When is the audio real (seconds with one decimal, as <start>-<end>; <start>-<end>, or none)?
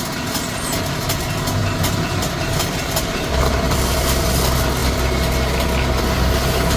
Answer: 0.0-1.6; 4.3-6.8